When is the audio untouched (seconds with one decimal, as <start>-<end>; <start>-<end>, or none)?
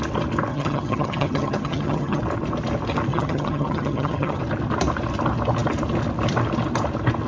0.0-0.5; 2.2-3.1; 4.4-7.3